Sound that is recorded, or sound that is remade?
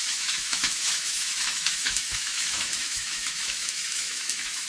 remade